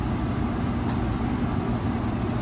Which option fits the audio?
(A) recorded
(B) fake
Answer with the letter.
A